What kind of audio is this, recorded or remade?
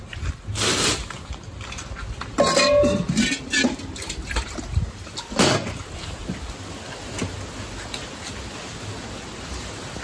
recorded